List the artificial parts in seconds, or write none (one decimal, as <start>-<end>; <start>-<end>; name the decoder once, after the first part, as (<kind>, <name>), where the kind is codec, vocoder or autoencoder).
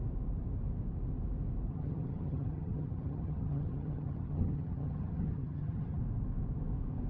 1.7-6.0 (vocoder, HiFi-GAN)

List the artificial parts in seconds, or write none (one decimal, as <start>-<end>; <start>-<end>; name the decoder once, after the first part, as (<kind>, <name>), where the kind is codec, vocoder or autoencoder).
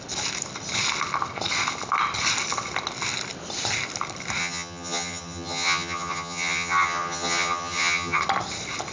4.4-8.2 (vocoder, HiFi-GAN)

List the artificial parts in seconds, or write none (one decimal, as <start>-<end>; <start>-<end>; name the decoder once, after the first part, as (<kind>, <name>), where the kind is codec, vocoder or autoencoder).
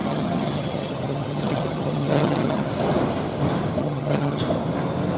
0.0-2.7 (vocoder, HiFi-GAN); 3.8-4.4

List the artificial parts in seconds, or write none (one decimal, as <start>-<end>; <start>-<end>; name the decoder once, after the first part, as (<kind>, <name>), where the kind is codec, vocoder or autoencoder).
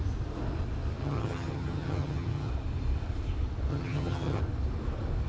1.0-2.5 (vocoder, HiFi-GAN); 3.7-4.4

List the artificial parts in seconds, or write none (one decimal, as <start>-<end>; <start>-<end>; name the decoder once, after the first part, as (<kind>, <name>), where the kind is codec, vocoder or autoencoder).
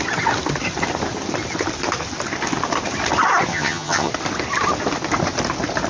3.5-4.1 (vocoder, HiFi-GAN)